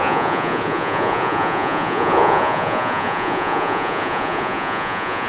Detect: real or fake fake